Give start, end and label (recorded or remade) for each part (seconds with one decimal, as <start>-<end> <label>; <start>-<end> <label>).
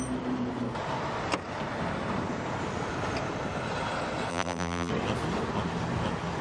0.0-4.3 recorded; 4.3-4.9 remade; 4.9-6.4 recorded